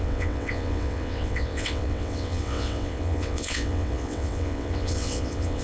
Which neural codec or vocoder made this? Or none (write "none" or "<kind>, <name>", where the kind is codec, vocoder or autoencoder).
vocoder, WaveNeXt